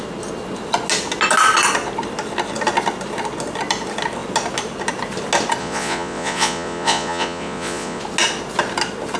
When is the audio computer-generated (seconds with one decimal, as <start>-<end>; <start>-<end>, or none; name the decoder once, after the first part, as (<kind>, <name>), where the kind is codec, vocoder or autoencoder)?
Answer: 5.6-8.0 (vocoder, Vocos)